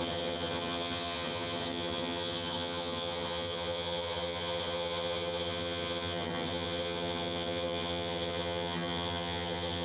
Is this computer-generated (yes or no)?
yes